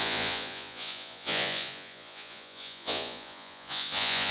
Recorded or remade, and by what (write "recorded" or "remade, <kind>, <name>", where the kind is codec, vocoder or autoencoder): remade, vocoder, Vocos